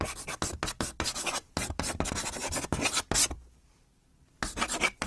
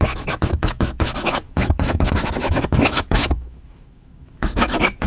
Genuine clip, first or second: first